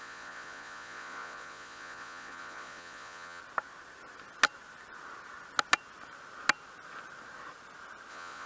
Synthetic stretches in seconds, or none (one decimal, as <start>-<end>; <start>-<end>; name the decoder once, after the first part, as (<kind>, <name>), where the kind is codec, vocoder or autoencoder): 0.0-3.4 (vocoder, Vocos); 8.1-8.5